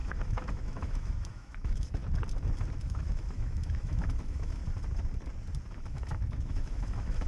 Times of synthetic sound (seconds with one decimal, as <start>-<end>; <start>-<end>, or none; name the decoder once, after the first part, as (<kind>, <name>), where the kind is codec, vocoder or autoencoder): 0.0-2.0 (autoencoder, DAC-VAE); 2.7-4.6; 5.7-7.3